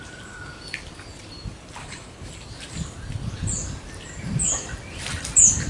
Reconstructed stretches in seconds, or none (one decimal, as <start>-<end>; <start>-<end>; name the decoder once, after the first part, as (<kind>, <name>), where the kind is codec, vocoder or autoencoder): 1.8-2.3 (codec, HILCodec)